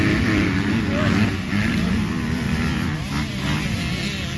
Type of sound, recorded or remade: recorded